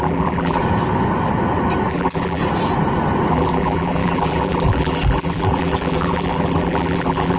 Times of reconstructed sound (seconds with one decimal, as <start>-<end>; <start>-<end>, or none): 0.0-0.6; 1.9-2.4; 3.3-7.4